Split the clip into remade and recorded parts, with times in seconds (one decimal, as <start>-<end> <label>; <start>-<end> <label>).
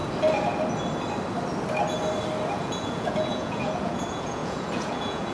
0.0-2.5 recorded; 2.5-5.3 remade